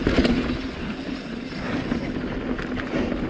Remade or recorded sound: recorded